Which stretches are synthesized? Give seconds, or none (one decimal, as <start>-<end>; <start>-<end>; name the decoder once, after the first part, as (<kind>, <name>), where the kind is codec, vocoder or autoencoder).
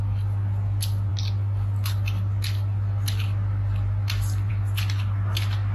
none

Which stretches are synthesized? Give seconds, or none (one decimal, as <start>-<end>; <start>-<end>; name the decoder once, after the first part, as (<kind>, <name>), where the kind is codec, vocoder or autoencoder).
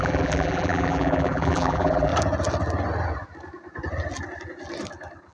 0.0-2.1 (vocoder, BigVGAN v2)